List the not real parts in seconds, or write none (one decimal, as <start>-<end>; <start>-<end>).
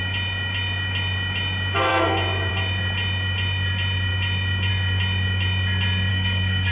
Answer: 6.1-6.7